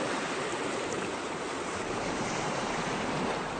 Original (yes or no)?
no